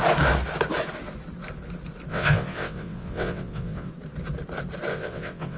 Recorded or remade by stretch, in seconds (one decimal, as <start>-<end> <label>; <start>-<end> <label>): 0.0-2.1 recorded; 2.1-3.9 remade; 3.9-4.9 recorded; 4.9-5.6 remade